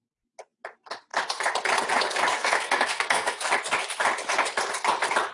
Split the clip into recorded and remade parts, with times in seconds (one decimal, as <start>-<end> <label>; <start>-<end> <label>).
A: 0.0-2.3 recorded; 2.3-3.5 remade; 3.5-5.3 recorded